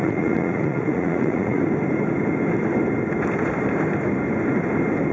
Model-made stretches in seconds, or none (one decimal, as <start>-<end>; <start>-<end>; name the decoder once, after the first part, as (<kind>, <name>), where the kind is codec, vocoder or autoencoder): 0.0-1.6 (vocoder, Vocos)

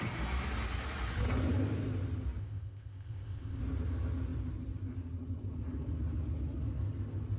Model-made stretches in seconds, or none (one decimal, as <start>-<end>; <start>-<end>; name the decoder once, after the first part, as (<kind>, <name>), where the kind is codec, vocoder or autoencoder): 2.4-3.6 (codec, ZipCodec)

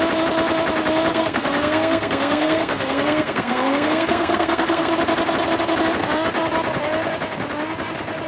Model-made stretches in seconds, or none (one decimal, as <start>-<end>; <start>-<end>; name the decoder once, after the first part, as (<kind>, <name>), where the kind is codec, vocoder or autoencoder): 1.1-4.9 (codec, SNAC)

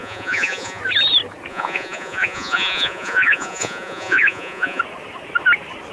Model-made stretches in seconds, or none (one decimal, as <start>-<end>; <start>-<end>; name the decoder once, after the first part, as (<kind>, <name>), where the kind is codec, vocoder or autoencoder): 0.0-0.8 (vocoder, Vocos); 1.5-4.8

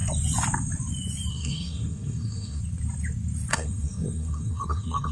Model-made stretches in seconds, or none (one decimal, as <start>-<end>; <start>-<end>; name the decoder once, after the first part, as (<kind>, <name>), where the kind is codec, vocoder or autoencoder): 1.3-2.6 (codec, SNAC); 3.5-5.1

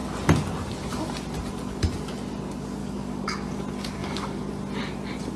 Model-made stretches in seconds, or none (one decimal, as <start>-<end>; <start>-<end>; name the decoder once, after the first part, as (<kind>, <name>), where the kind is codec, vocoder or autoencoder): 2.8-3.5 (codec, DAC); 4.0-4.5

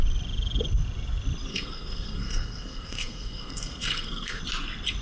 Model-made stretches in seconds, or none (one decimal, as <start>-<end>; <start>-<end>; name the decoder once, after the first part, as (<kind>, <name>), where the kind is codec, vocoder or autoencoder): 1.5-4.4 (codec, SNAC)

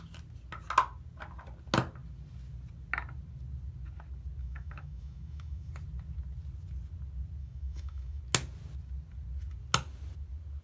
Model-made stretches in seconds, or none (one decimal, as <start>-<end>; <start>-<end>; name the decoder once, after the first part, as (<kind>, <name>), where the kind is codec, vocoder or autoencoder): 4.4-5.7 (autoencoder, DAC-VAE); 7.4-8.2